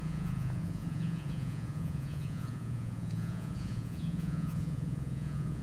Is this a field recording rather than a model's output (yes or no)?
no